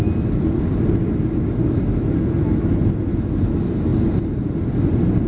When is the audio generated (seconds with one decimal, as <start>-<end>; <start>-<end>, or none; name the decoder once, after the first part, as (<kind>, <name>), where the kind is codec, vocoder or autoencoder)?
none